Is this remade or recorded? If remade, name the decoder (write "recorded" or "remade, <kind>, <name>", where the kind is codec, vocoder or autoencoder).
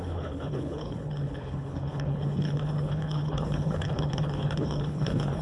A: remade, codec, HILCodec